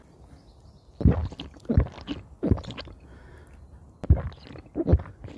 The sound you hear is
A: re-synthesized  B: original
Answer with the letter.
B